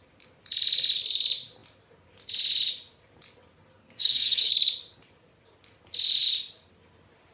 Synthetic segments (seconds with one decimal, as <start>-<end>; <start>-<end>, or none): 3.8-4.5